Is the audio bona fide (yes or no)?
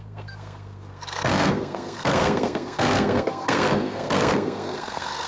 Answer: no